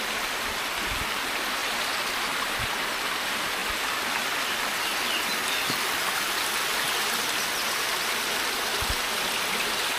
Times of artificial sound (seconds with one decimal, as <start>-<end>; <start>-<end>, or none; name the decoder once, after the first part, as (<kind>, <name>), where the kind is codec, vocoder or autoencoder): none